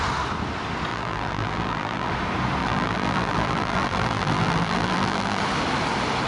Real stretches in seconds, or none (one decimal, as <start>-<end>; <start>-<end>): 0.0-0.9; 2.1-2.6; 5.4-6.3